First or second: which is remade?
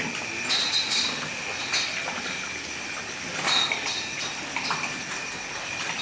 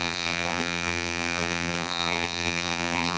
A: second